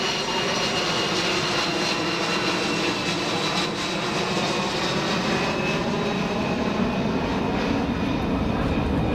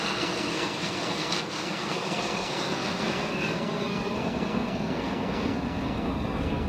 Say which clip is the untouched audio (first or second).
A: first